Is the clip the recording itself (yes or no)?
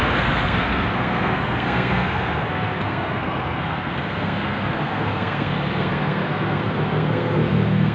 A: no